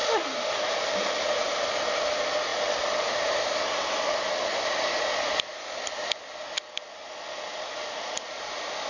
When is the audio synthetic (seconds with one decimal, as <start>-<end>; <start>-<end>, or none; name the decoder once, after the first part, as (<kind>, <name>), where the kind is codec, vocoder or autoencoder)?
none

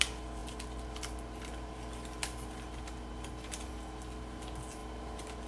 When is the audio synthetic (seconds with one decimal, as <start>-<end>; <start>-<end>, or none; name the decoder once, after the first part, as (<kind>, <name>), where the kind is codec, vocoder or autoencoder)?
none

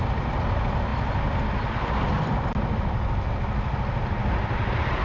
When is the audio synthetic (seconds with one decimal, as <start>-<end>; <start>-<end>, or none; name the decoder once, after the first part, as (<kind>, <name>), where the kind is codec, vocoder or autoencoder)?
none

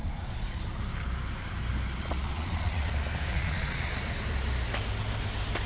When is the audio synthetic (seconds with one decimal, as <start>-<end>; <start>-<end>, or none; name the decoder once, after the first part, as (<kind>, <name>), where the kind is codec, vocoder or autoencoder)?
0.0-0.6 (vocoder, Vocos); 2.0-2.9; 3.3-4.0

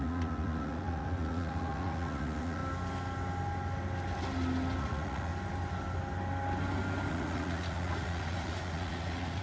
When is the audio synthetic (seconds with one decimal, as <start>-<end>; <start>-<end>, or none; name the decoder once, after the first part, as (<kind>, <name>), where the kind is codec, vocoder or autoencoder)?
0.0-2.6 (vocoder, Vocos); 4.8-5.3; 7.1-9.4

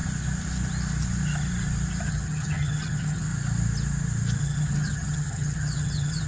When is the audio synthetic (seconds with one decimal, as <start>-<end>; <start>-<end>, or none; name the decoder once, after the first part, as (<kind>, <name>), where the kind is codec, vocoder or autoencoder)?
2.1-3.3 (vocoder, HiFi-GAN); 4.4-6.3

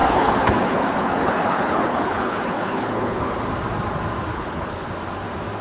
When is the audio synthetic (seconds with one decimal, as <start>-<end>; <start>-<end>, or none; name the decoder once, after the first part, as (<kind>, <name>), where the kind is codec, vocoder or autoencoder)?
0.0-3.4 (codec, HILCodec); 4.3-4.9